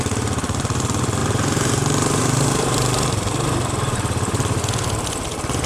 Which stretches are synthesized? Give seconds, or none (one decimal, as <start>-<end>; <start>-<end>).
1.2-4.6